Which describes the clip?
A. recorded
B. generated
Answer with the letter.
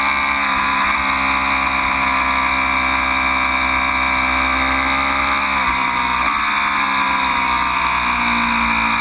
A